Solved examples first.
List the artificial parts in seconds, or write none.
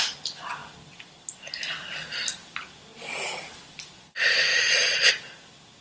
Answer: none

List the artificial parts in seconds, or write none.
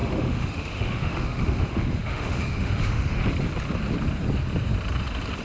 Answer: 0.0-3.2 (autoencoder, DAC-VAE)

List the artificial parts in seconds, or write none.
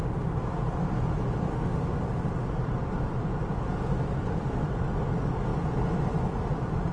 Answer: 1.5-2.0 (autoencoder, DAC-VAE)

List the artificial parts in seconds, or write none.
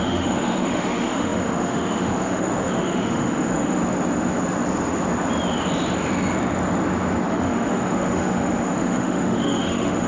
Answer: 0.0-3.8 (autoencoder, DAC-VAE); 7.3-10.1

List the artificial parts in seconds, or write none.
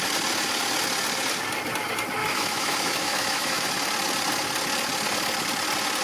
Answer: 2.2-3.7 (autoencoder, DAC-VAE)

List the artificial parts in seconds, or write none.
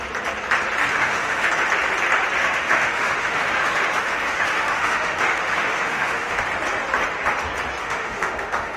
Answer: 0.9-1.5 (autoencoder, DAC-VAE); 2.4-6.4; 7.8-8.8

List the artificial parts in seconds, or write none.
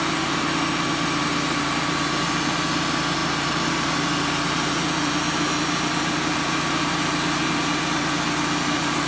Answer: none